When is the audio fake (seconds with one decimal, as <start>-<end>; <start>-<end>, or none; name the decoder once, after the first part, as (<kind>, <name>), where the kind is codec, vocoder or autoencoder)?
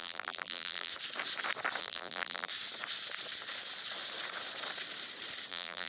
0.0-0.9 (vocoder, BigVGAN v2); 1.8-2.5; 5.5-5.9